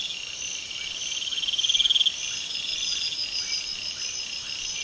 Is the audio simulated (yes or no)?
no